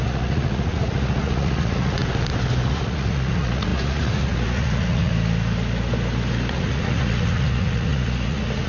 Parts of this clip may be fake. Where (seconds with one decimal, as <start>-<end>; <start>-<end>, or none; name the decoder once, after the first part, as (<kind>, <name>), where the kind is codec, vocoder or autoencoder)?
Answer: 0.0-2.0 (vocoder, Vocos); 2.7-5.1; 6.5-8.7